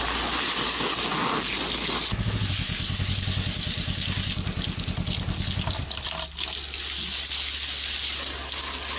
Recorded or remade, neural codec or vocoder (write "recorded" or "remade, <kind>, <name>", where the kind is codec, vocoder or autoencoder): recorded